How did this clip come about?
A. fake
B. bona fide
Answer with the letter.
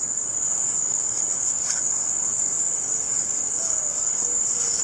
A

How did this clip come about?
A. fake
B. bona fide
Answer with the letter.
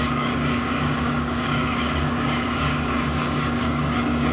A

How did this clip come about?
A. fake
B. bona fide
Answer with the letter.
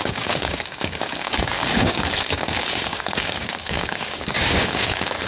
A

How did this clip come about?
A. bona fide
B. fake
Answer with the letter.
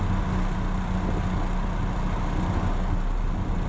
A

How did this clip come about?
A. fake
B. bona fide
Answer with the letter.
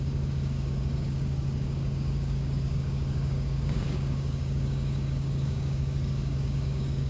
A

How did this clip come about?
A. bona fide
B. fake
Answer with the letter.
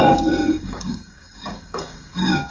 B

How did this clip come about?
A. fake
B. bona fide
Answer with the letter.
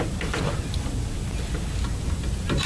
B